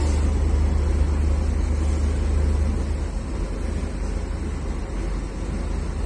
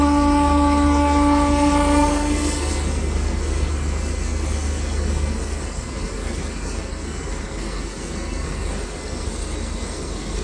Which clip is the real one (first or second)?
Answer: first